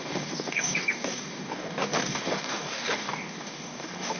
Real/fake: fake